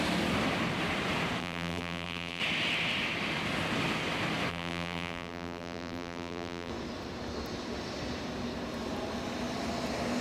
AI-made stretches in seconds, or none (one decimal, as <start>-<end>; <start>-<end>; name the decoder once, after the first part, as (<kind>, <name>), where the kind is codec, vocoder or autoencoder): 1.4-2.4 (vocoder, BigVGAN v2); 4.5-6.7